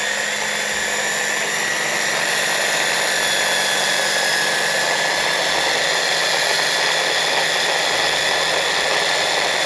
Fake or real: real